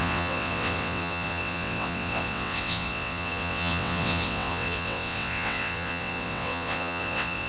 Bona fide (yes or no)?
no